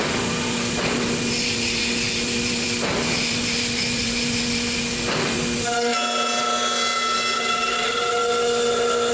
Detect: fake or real real